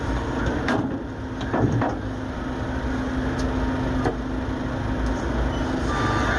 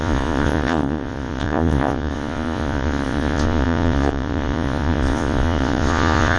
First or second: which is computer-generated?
second